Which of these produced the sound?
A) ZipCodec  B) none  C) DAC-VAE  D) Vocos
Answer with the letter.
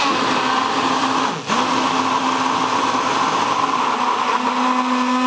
B